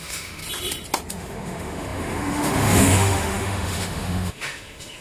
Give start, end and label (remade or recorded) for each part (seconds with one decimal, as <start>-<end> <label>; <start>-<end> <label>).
0.0-0.4 remade; 0.4-1.1 recorded; 1.1-5.0 remade